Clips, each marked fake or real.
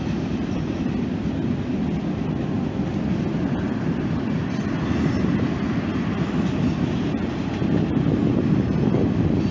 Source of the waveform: real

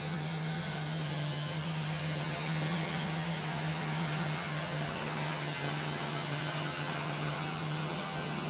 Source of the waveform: fake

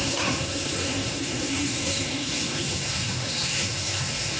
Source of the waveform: fake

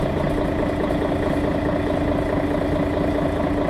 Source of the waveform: real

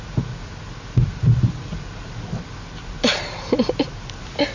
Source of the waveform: real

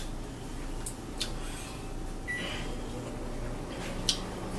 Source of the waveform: real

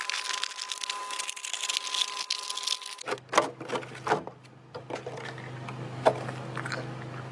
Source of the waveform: real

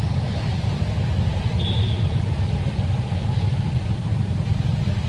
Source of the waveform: real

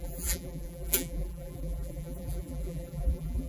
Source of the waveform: fake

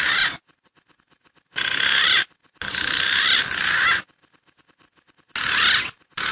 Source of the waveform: real